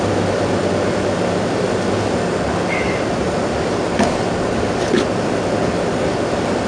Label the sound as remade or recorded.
recorded